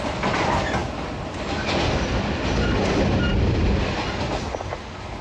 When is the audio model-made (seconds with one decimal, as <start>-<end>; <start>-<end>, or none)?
none